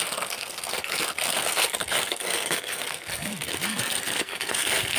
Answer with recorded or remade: remade